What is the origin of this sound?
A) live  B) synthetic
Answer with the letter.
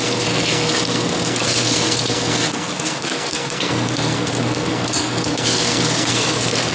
B